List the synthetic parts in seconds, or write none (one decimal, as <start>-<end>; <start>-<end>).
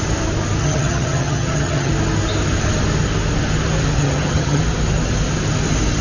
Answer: 0.6-1.9; 4.0-4.6